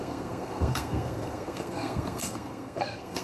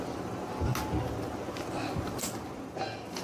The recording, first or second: second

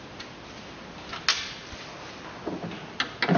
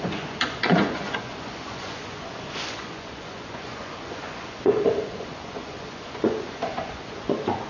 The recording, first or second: first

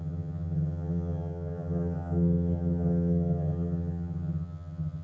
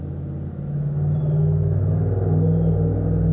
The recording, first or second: second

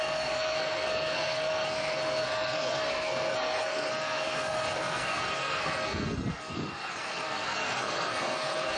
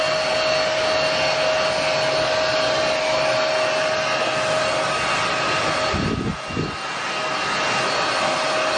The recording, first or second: second